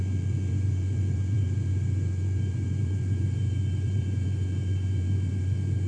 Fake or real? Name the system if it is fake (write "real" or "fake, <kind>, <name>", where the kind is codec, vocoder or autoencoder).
fake, vocoder, Vocos